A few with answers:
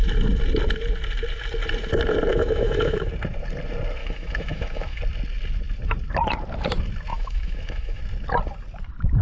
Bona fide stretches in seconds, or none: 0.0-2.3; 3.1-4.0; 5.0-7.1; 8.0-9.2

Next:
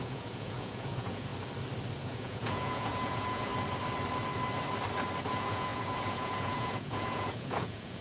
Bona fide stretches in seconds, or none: 1.3-2.0; 3.5-5.2

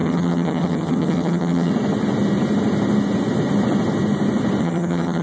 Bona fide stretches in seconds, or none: 1.7-4.6

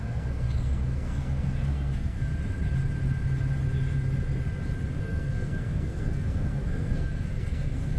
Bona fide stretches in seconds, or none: 2.3-5.0

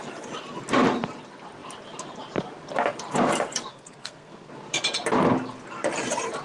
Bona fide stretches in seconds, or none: 0.0-3.7; 4.5-6.4